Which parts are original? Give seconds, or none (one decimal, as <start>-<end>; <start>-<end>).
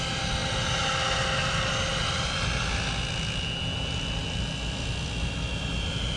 0.0-6.2